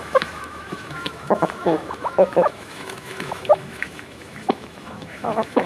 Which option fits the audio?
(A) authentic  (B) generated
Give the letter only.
B